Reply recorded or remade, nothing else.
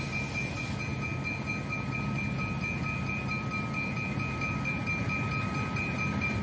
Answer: recorded